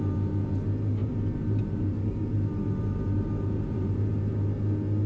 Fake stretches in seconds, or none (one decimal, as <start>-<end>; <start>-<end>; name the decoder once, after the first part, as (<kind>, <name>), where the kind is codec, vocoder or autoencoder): 1.0-4.1 (vocoder, BigVGAN v2)